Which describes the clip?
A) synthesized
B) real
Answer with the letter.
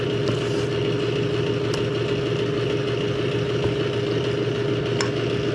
B